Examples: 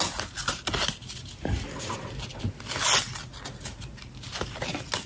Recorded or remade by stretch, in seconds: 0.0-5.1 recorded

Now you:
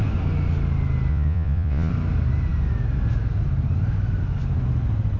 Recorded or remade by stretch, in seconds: 0.0-1.1 recorded; 1.1-1.9 remade; 1.9-5.2 recorded

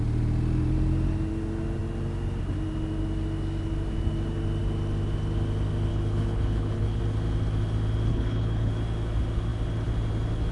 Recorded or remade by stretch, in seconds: 0.0-5.9 recorded; 5.9-7.0 remade; 7.0-8.1 recorded; 8.1-8.7 remade; 8.7-10.5 recorded

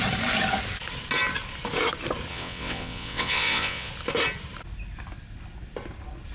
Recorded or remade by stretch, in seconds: 0.0-2.3 recorded; 2.3-3.9 remade; 3.9-6.3 recorded

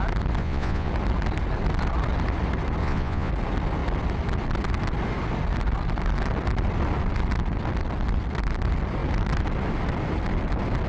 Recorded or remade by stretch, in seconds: 0.0-0.4 recorded; 0.4-0.9 remade; 0.9-2.8 recorded; 2.8-3.3 remade; 3.3-10.9 recorded

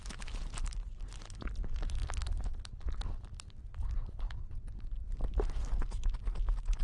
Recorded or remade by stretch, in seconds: 0.0-2.0 recorded; 2.0-5.8 remade; 5.8-6.8 recorded

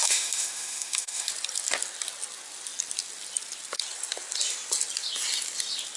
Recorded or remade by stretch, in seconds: 0.0-1.3 remade; 1.3-6.0 recorded

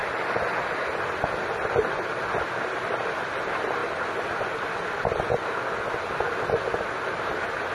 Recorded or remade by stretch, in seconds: 0.0-7.7 recorded